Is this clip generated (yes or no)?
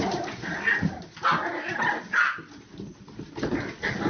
no